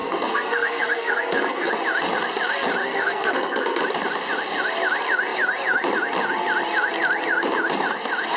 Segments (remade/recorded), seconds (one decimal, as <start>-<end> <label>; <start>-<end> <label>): 0.0-1.7 remade; 1.7-2.8 recorded; 2.8-3.8 remade; 3.8-8.4 recorded

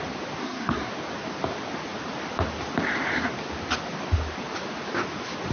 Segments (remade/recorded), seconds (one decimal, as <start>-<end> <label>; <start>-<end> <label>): 0.0-0.4 recorded; 0.4-0.9 remade; 0.9-5.5 recorded